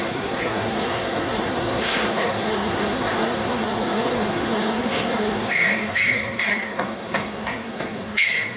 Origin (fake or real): fake